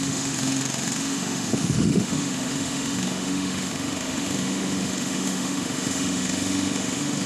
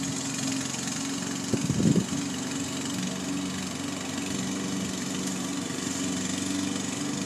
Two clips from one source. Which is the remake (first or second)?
first